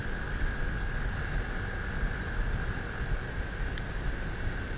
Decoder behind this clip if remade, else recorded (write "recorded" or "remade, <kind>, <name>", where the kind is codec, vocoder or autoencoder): recorded